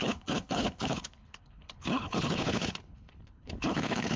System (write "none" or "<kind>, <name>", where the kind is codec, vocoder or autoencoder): codec, HILCodec